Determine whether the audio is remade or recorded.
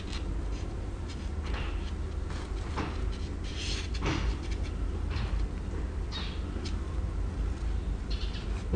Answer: recorded